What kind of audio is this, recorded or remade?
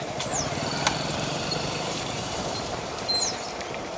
remade